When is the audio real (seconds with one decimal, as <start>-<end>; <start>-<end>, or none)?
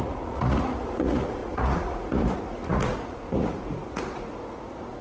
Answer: none